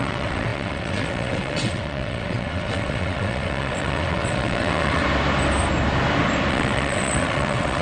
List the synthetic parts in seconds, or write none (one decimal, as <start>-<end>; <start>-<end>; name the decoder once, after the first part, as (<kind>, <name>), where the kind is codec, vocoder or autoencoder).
0.0-5.0 (vocoder, WaveNeXt); 6.5-7.8